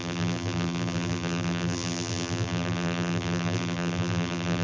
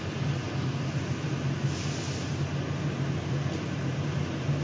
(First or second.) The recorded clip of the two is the second